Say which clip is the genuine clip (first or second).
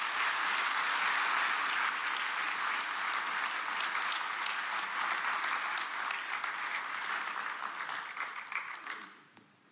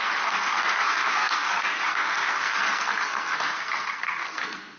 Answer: first